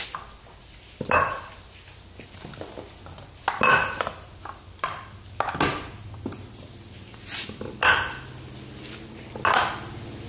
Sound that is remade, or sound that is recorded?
recorded